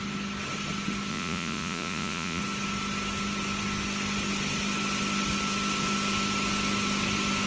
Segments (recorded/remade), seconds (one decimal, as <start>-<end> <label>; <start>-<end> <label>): 0.0-1.1 recorded; 1.1-2.4 remade; 2.4-7.5 recorded